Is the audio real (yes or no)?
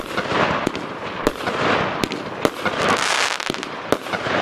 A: yes